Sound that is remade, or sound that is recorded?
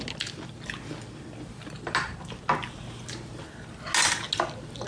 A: recorded